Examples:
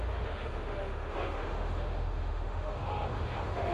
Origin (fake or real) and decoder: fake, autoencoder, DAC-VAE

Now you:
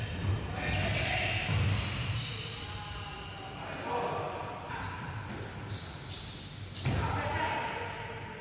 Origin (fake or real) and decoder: real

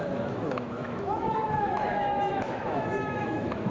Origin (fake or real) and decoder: fake, autoencoder, DAC-VAE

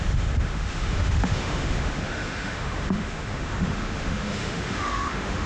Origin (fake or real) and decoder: fake, autoencoder, DAC-VAE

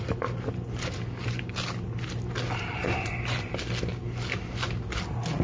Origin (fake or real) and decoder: real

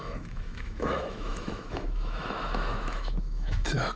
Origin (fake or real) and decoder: fake, autoencoder, DAC-VAE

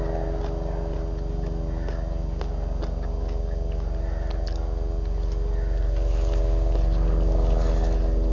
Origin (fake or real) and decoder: real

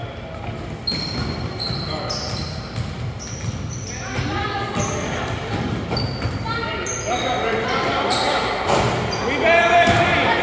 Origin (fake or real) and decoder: real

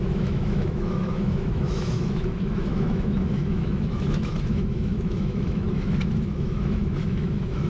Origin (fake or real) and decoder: fake, autoencoder, DAC-VAE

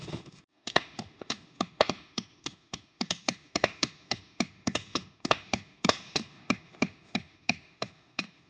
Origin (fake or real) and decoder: fake, autoencoder, DAC-VAE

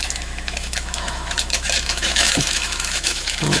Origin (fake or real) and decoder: fake, autoencoder, DAC-VAE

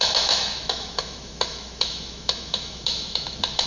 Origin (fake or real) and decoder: fake, autoencoder, DAC-VAE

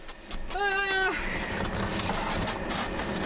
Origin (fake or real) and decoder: real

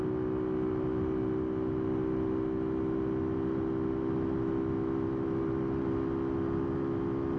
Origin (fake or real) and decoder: real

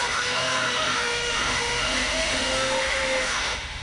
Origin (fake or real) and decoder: fake, autoencoder, DAC-VAE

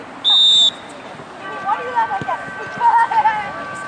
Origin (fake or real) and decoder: real